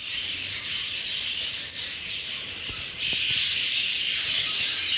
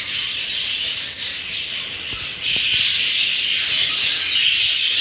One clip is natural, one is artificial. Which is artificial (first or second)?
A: first